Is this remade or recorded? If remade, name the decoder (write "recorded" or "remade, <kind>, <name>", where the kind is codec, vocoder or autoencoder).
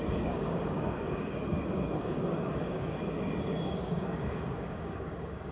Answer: remade, codec, DAC